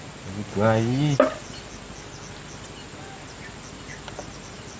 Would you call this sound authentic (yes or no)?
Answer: yes